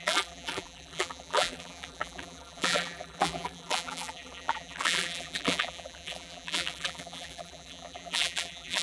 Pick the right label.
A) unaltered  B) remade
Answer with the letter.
B